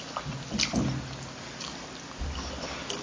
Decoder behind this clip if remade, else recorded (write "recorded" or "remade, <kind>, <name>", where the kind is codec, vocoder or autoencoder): recorded